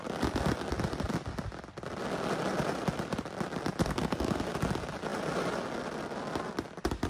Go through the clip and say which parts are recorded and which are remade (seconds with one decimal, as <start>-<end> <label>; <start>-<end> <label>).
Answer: 0.0-3.8 recorded; 3.8-4.4 remade; 4.4-7.1 recorded